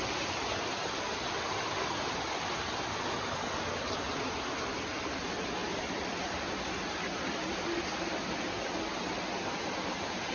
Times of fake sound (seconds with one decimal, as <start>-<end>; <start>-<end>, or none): 5.6-6.3